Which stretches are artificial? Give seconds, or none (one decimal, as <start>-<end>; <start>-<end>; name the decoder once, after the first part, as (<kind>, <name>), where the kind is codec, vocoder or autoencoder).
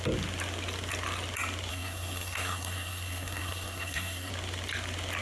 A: 1.7-4.3 (codec, SNAC)